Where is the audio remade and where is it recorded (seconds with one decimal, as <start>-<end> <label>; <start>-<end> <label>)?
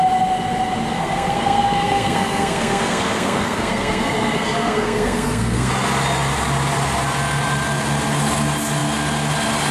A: 0.0-0.9 recorded; 0.9-5.7 remade; 5.7-9.7 recorded